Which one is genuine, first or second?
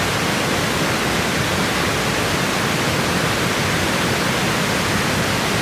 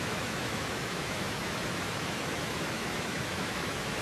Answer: first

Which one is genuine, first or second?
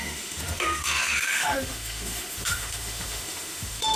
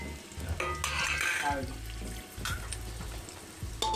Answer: second